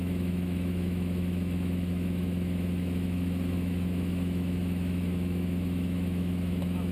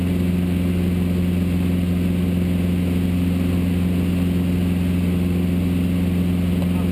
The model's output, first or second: first